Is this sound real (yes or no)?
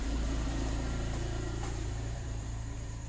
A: no